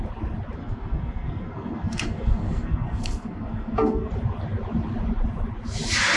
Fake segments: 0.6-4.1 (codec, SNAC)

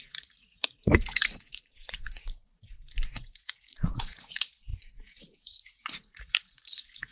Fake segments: 0.0-7.1 (vocoder, Vocos)